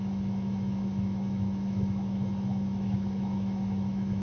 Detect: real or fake fake